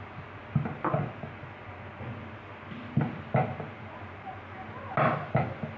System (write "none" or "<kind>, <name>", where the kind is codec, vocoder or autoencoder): none